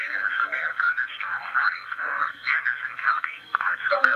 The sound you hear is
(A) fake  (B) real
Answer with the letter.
A